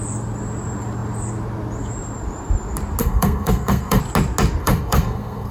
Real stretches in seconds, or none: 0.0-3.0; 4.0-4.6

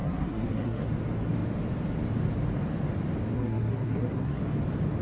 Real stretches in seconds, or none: 0.9-3.3; 4.4-5.0

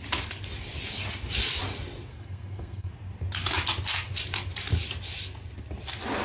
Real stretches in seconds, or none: 0.0-2.1; 2.9-6.2